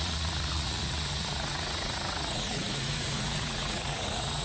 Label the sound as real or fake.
fake